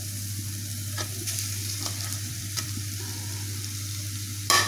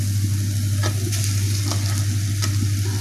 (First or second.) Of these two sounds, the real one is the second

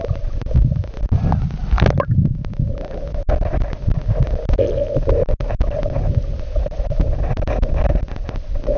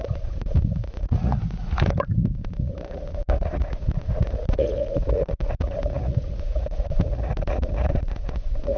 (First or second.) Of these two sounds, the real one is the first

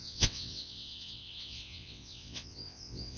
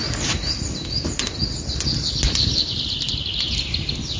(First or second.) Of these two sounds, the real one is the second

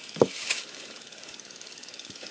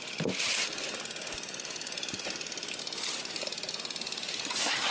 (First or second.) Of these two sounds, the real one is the second